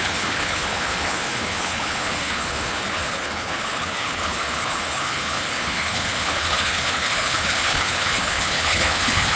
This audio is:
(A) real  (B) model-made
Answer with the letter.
B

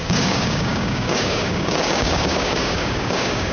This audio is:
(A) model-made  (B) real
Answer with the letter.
A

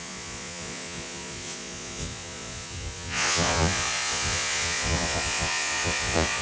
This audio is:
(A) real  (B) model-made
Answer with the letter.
B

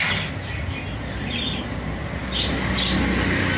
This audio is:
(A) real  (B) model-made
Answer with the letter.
A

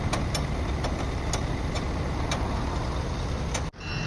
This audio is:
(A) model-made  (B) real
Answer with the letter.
B